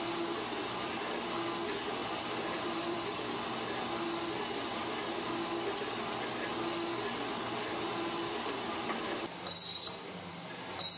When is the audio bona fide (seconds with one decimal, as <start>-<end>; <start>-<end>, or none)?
0.0-2.0; 3.2-11.0